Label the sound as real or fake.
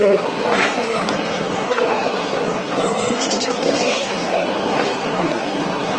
fake